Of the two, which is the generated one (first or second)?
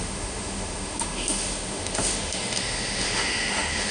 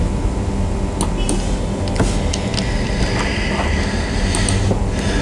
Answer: first